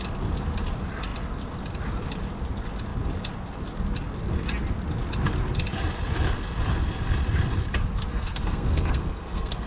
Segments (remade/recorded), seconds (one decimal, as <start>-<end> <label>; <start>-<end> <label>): 0.0-8.1 recorded; 8.1-9.7 remade